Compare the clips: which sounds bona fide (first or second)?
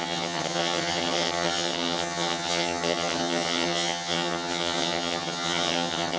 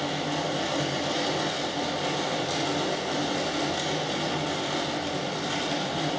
second